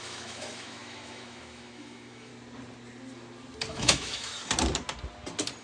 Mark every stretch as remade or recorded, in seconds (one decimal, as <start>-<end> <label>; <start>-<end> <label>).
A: 0.0-2.3 remade; 2.3-3.7 recorded; 3.7-4.3 remade; 4.3-5.6 recorded